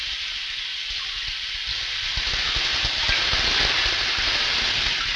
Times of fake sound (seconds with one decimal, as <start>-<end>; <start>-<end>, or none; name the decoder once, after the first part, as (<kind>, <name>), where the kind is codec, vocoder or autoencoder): none